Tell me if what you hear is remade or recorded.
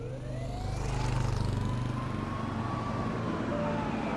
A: recorded